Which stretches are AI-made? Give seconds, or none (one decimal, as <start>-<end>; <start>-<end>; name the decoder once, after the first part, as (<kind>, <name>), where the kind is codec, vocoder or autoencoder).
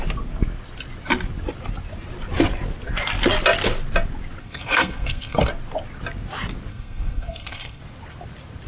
4.4-5.5 (codec, SNAC); 6.7-7.8